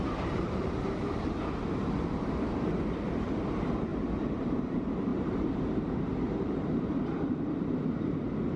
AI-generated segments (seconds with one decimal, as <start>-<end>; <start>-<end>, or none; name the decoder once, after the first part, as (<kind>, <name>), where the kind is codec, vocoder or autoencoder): 0.0-3.9 (vocoder, BigVGAN v2); 4.4-8.6